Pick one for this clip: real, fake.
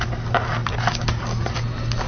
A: real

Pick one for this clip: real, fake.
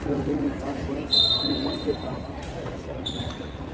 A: fake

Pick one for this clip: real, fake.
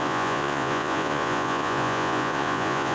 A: fake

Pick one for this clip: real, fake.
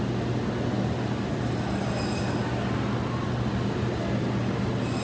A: real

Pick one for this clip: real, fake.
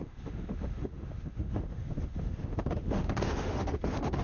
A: fake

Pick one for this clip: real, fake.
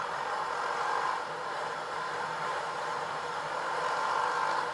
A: fake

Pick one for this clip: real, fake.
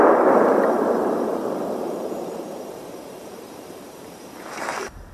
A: fake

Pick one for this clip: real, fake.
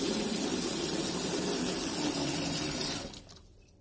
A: real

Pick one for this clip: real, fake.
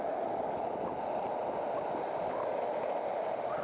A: real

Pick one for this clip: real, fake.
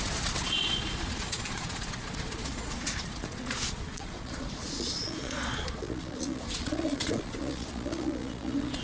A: fake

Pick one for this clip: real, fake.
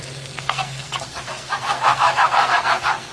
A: fake